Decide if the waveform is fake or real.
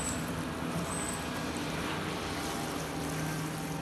real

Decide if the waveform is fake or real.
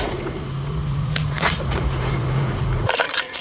fake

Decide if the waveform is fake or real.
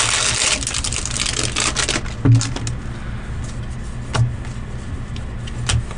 real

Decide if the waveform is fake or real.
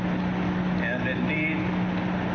real